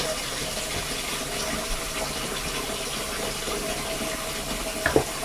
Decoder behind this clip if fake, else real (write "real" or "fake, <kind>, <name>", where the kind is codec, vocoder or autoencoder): real